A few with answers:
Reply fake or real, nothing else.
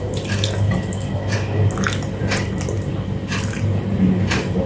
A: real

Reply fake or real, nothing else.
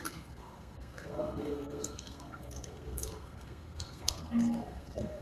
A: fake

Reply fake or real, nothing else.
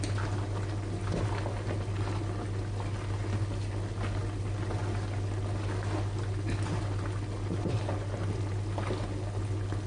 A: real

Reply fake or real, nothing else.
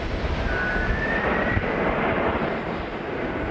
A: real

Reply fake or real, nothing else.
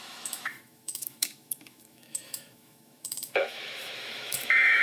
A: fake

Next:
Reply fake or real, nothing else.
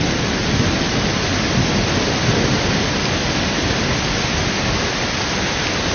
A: real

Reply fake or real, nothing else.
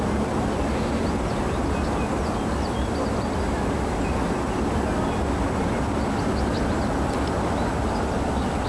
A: real